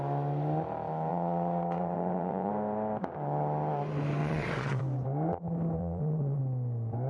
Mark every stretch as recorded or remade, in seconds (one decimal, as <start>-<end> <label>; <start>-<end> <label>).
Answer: 0.0-1.1 recorded; 1.1-2.5 remade; 2.5-4.2 recorded; 4.2-4.8 remade; 4.8-5.8 recorded; 5.8-6.4 remade; 6.4-7.1 recorded